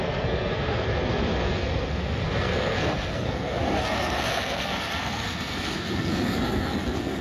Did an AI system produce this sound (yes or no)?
yes